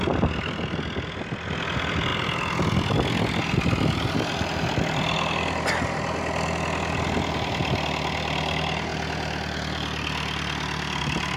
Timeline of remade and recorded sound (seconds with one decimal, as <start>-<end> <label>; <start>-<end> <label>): 0.0-11.4 recorded